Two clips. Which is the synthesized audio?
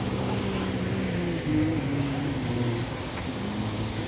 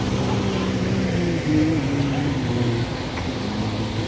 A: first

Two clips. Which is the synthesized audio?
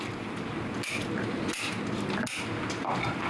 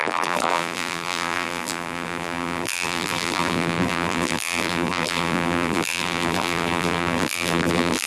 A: second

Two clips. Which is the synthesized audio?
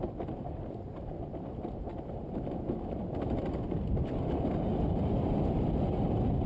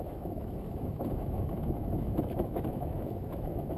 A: second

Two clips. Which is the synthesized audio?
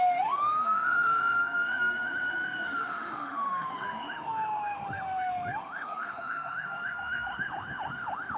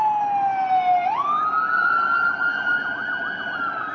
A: first